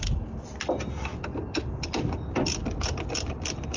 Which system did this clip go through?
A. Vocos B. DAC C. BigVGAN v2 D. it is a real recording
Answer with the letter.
D